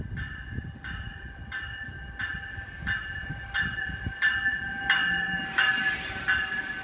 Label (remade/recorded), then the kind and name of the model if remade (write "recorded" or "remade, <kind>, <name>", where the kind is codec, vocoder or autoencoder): recorded